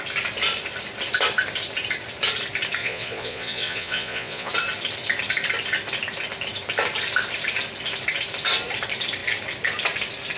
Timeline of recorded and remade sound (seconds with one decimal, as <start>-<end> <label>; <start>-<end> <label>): 0.0-2.8 recorded; 2.8-4.5 remade; 4.5-10.4 recorded